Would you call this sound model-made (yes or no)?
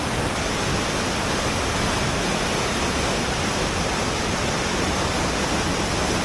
no